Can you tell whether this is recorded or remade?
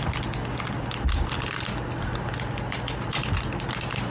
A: recorded